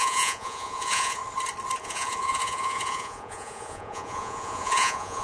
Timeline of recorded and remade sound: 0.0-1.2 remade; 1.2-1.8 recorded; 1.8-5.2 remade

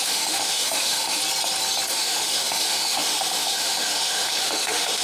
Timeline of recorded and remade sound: 0.0-1.2 remade; 1.2-1.9 recorded; 1.9-5.0 remade

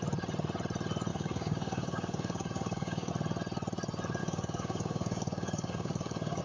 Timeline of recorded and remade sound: 0.0-1.1 recorded; 1.1-3.1 remade; 3.1-4.2 recorded; 4.2-6.4 remade

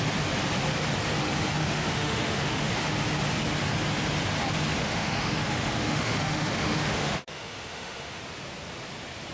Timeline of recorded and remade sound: 0.0-1.6 recorded; 1.6-2.7 remade; 2.7-4.8 recorded; 4.8-8.2 remade; 8.2-9.3 recorded